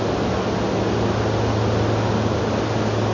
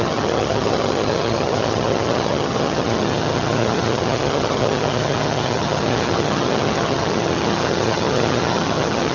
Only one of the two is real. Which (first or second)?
first